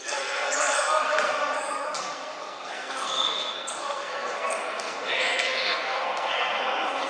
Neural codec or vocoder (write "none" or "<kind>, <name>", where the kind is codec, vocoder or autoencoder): codec, SNAC